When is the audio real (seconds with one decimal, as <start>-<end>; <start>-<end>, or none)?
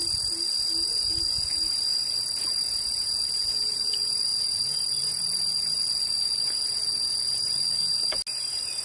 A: 0.0-8.8